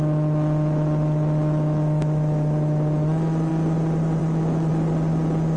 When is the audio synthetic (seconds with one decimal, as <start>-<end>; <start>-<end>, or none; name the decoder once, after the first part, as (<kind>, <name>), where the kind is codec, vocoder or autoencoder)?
0.0-3.5 (autoencoder, DAC-VAE); 4.2-4.7